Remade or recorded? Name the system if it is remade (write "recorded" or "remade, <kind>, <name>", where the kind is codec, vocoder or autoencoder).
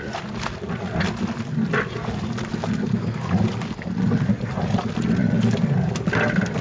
recorded